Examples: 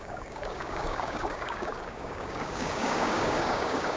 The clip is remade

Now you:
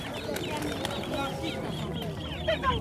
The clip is recorded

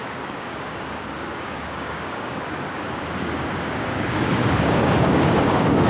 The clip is remade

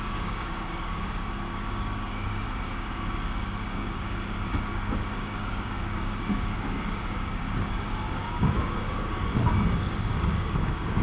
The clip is remade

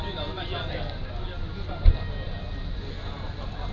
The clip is recorded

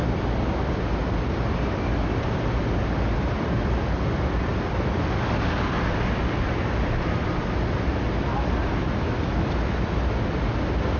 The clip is recorded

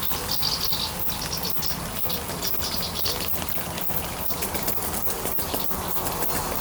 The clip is recorded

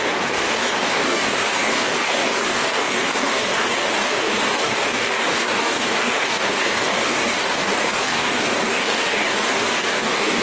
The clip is remade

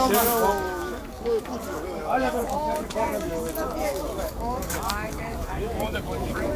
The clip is remade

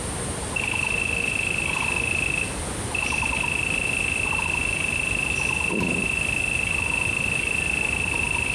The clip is recorded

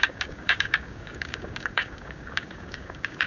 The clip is remade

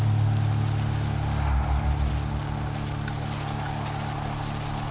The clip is recorded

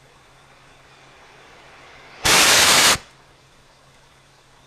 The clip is remade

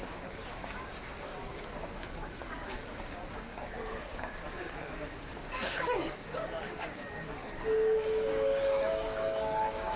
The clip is remade